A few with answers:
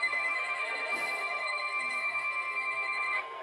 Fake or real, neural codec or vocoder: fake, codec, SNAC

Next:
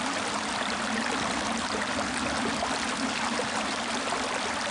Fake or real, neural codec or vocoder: real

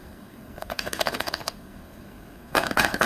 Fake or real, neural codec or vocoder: fake, codec, SNAC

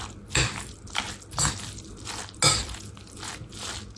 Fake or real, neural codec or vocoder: real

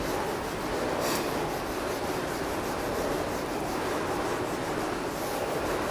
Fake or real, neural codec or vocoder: real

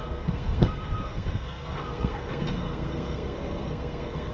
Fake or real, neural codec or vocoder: fake, codec, SNAC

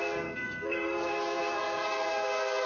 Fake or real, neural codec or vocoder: fake, codec, SNAC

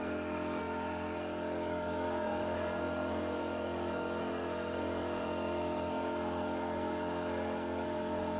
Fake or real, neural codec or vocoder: fake, codec, SNAC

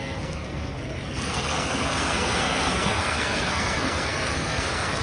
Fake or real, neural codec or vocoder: fake, codec, SNAC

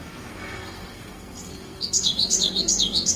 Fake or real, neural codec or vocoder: fake, codec, SNAC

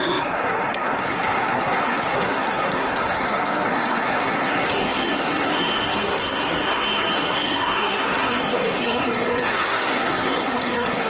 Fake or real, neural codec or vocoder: fake, codec, SNAC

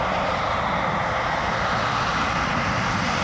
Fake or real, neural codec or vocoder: real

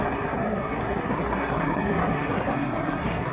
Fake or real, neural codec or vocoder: fake, codec, SNAC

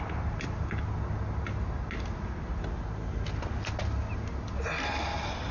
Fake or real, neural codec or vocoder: real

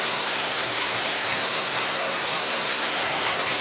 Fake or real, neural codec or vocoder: fake, codec, SNAC